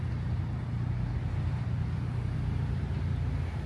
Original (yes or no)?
yes